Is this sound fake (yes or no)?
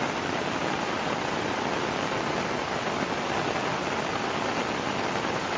no